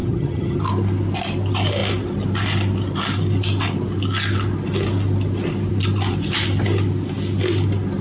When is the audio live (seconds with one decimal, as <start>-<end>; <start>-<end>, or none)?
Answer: 0.6-8.0